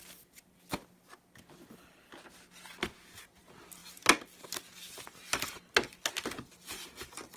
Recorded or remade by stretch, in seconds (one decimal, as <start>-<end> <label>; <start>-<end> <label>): 0.0-7.4 recorded